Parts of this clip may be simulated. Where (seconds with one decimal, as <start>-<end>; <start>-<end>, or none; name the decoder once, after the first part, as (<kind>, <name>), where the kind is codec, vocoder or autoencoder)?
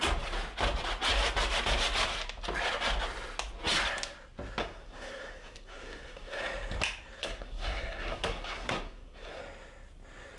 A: 4.6-6.4 (codec, SNAC); 7.2-9.4